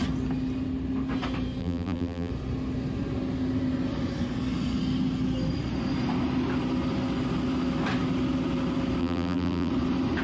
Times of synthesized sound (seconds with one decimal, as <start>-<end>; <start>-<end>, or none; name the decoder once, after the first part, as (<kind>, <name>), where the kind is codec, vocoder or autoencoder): 1.6-2.3 (vocoder, BigVGAN v2); 9.0-9.7